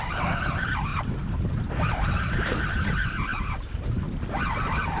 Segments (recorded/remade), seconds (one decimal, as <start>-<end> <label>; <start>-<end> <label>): 0.0-0.9 recorded; 0.9-2.2 remade; 2.2-3.3 recorded; 3.3-4.0 remade; 4.0-5.0 recorded